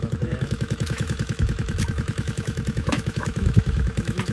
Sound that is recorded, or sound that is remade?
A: remade